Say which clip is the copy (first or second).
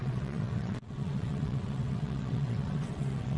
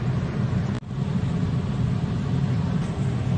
first